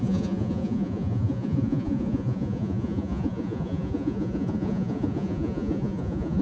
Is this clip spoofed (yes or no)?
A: yes